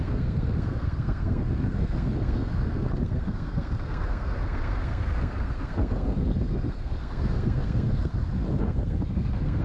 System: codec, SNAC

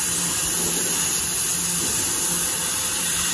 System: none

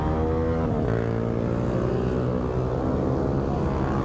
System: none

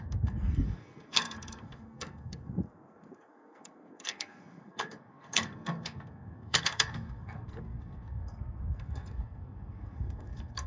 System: codec, SNAC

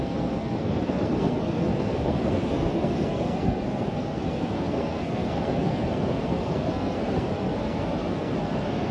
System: codec, SNAC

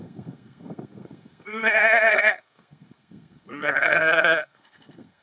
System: codec, SNAC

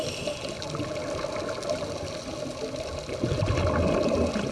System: none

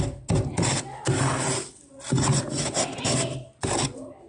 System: none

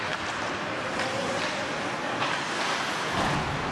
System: none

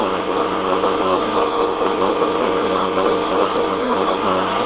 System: codec, SNAC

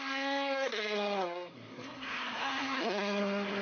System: codec, SNAC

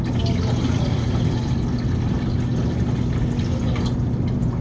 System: none